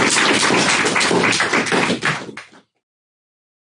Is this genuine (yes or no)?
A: yes